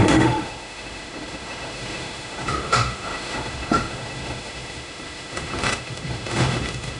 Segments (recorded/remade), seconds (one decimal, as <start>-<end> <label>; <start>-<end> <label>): 0.0-7.0 remade